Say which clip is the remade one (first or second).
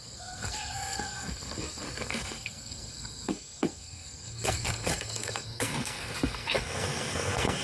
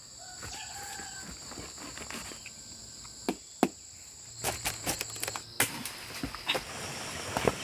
first